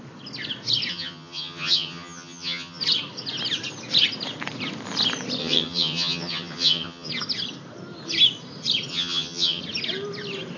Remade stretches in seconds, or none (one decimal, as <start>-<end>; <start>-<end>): 0.9-2.8; 5.4-7.1; 8.9-9.6